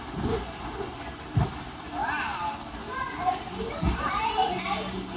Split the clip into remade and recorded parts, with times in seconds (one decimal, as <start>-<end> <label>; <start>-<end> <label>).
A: 0.0-5.2 recorded

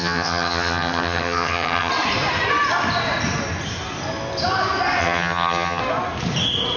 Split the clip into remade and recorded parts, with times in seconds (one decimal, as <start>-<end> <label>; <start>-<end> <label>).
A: 0.0-1.9 remade; 1.9-5.0 recorded; 5.0-5.8 remade; 5.8-6.8 recorded

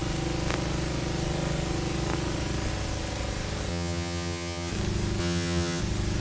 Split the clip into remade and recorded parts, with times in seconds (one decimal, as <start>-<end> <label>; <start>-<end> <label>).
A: 0.0-3.7 recorded; 3.7-4.7 remade; 4.7-5.2 recorded; 5.2-5.8 remade; 5.8-6.2 recorded